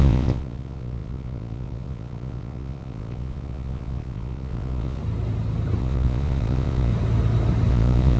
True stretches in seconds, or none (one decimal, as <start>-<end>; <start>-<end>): 5.0-5.8; 6.9-7.7